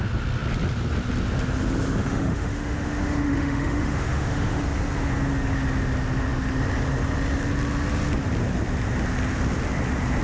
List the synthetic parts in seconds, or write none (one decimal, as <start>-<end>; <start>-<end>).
2.0-4.6